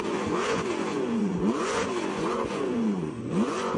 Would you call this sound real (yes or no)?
no